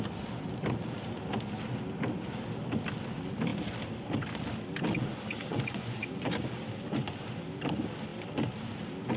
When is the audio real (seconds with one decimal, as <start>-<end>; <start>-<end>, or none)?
0.0-5.5; 6.2-9.2